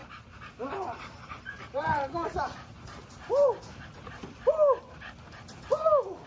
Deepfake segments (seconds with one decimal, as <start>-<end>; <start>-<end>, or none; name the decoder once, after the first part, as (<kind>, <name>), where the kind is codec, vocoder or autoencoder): 0.0-3.8 (vocoder, BigVGAN v2)

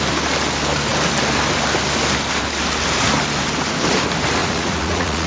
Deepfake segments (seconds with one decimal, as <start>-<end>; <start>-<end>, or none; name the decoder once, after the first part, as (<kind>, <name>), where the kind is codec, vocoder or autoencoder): 4.4-5.3 (vocoder, Vocos)

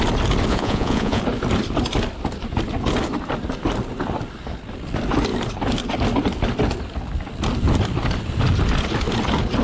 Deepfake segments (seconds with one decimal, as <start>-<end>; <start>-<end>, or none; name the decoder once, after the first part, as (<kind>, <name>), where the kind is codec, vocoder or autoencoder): 0.5-1.2 (vocoder, Vocos)